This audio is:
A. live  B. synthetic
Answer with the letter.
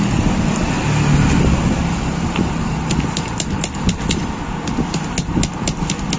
A